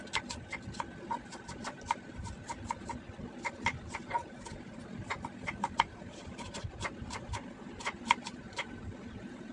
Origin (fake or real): real